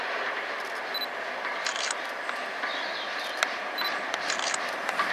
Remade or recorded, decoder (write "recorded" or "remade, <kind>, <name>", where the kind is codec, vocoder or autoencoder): recorded